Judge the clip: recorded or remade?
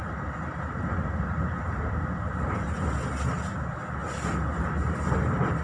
recorded